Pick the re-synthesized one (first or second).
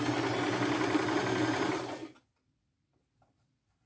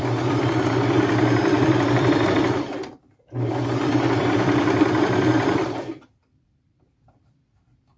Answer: second